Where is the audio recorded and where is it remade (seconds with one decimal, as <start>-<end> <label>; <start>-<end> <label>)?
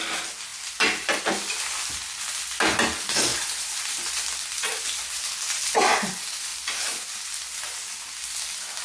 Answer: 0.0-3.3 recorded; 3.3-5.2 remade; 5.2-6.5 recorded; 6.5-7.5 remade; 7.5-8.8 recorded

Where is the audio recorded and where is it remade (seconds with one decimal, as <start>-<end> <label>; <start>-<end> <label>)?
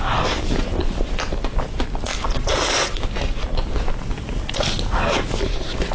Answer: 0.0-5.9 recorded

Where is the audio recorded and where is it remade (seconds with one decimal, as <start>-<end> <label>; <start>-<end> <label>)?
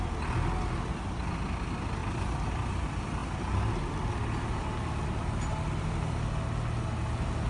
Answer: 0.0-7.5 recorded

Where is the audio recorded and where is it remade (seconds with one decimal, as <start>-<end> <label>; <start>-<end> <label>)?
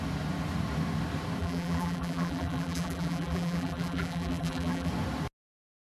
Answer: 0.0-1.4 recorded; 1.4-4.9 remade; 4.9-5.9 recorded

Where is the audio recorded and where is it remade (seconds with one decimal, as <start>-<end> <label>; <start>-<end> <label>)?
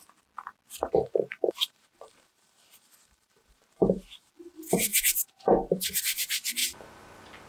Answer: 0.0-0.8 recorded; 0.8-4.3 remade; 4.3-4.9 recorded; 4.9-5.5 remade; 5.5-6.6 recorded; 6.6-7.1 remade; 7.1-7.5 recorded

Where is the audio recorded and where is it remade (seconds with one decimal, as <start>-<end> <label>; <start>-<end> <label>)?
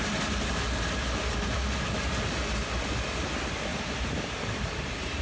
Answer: 0.0-3.7 recorded; 3.7-5.2 remade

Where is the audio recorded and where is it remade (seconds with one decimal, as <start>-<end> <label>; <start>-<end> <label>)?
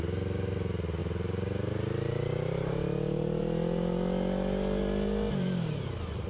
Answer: 0.0-6.3 recorded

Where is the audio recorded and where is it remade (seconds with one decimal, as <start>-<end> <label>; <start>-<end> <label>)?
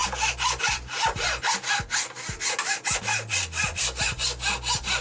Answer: 0.0-5.0 recorded